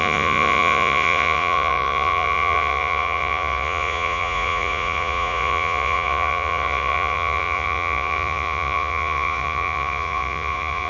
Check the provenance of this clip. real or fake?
fake